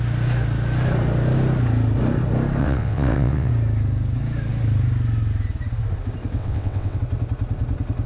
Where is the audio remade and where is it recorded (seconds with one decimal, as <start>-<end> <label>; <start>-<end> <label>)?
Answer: 0.0-2.6 recorded; 2.6-3.5 remade; 3.5-6.4 recorded; 6.4-7.0 remade; 7.0-8.1 recorded